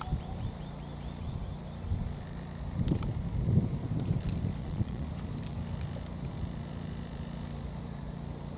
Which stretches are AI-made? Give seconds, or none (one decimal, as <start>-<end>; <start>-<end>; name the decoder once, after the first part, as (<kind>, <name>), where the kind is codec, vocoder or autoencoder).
4.6-5.1 (vocoder, Vocos)